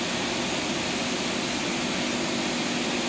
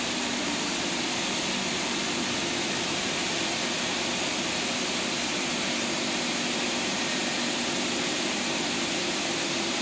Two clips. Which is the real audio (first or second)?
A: first